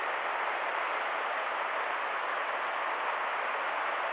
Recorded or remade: recorded